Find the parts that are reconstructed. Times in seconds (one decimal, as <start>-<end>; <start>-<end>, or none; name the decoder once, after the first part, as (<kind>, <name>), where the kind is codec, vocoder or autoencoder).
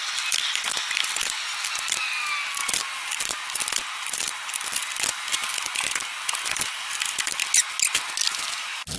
0.0-4.8 (vocoder, BigVGAN v2); 5.5-7.4